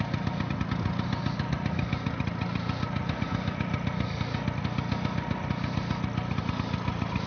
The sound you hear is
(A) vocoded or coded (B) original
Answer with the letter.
B